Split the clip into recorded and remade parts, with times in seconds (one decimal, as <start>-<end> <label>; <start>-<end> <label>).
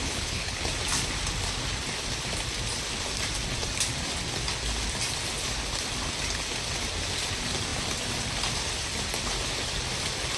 0.0-0.6 remade; 0.6-10.4 recorded